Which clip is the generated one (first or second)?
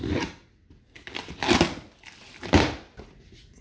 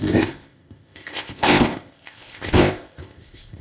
second